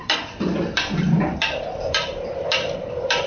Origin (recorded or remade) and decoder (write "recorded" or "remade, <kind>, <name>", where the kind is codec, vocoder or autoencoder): remade, vocoder, BigVGAN v2